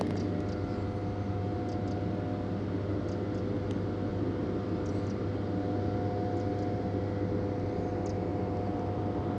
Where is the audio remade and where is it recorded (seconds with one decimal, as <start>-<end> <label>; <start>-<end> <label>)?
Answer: 0.0-4.1 recorded; 4.1-4.9 remade; 4.9-8.3 recorded; 8.3-9.0 remade; 9.0-9.4 recorded